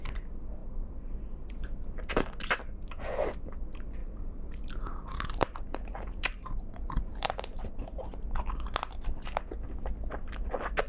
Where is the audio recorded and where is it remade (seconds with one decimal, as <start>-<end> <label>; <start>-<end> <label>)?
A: 0.0-0.6 recorded; 0.6-1.1 remade; 1.1-4.0 recorded; 4.0-8.5 remade; 8.5-10.9 recorded